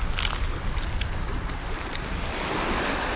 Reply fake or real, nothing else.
real